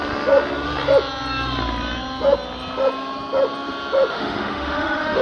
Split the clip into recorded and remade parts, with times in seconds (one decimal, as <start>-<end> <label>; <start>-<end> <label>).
0.0-4.1 recorded; 4.1-5.2 remade